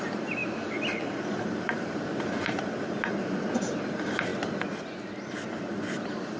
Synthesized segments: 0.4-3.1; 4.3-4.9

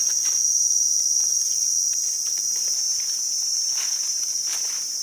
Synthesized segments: none

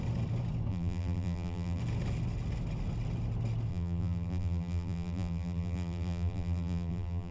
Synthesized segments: 0.7-1.8; 3.7-7.3